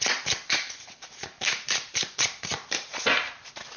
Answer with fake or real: fake